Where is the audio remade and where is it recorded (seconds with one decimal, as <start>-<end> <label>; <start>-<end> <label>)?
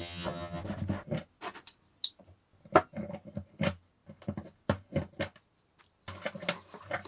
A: 0.0-0.6 remade; 0.6-7.1 recorded